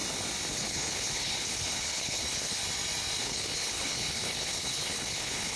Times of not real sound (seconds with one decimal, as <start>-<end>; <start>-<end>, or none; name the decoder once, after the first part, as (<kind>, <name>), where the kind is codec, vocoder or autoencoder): 0.5-2.6 (codec, HILCodec); 3.2-5.6